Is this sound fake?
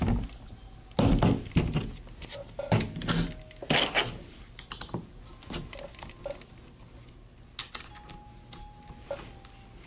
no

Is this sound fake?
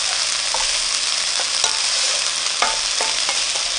no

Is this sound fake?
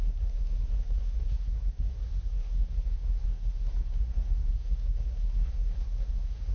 yes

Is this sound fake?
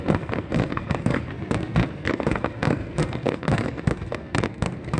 yes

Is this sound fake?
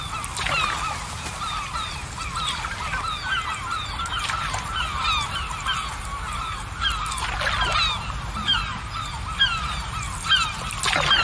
no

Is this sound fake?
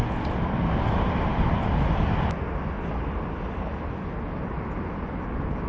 no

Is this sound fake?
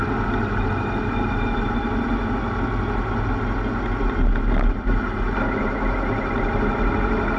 no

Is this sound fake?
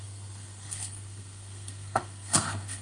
yes